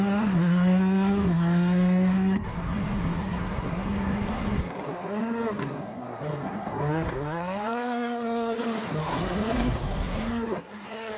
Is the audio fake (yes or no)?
yes